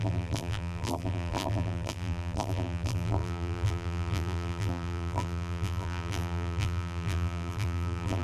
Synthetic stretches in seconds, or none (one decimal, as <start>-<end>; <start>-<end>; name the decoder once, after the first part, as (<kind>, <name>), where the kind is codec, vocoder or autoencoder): 0.0-8.2 (vocoder, BigVGAN v2)